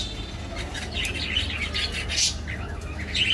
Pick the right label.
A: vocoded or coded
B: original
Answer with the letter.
B